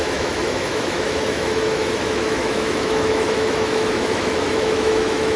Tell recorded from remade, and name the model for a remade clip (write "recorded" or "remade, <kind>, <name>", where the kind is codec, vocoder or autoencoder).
remade, autoencoder, DAC-VAE